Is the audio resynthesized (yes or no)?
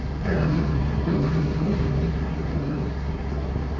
yes